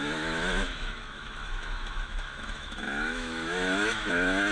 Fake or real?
fake